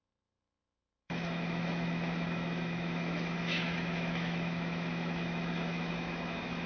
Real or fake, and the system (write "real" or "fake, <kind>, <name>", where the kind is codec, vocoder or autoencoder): fake, autoencoder, DAC-VAE